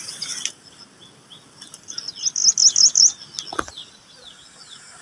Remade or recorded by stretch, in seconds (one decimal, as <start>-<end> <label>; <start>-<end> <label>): 0.0-5.0 recorded